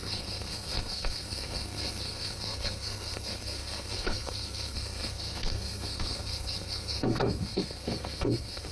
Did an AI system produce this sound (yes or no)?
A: yes